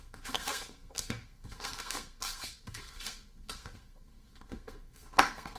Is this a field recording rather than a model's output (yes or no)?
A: no